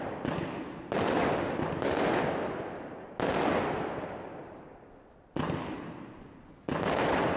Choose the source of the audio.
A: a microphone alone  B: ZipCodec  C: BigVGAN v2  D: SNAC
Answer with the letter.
A